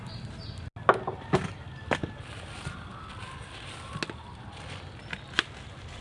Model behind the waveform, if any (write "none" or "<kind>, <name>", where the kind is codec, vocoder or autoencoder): none